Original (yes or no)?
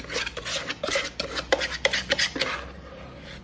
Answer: yes